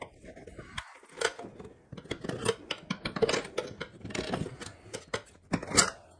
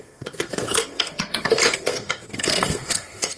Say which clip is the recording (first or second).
first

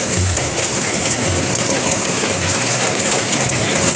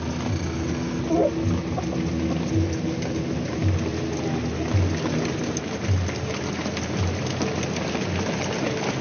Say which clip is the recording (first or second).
second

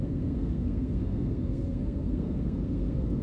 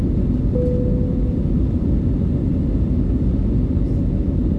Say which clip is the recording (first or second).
second